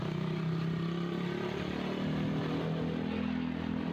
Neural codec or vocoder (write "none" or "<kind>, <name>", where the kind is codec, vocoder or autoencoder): none